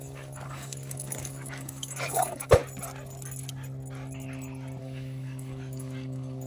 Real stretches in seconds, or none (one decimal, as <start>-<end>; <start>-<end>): 2.6-4.8